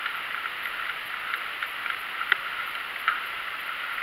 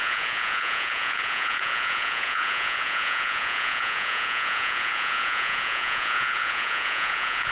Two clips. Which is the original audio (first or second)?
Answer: first